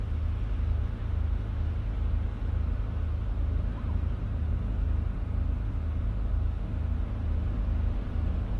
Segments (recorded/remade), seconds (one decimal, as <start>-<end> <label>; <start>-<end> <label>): 0.0-0.8 recorded; 0.8-1.7 remade; 1.7-6.3 recorded; 6.3-6.9 remade; 6.9-8.6 recorded